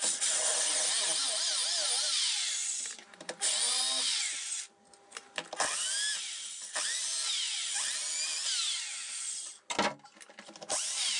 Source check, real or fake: real